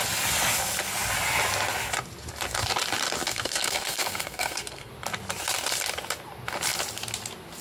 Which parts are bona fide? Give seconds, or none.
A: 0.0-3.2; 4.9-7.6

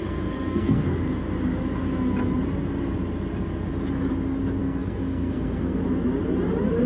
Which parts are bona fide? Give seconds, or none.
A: 1.0-4.6; 5.8-6.9

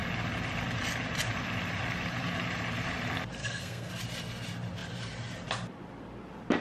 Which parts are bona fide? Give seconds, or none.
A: 0.0-3.4; 3.9-6.6

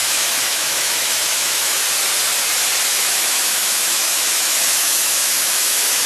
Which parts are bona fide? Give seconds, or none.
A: 1.8-2.9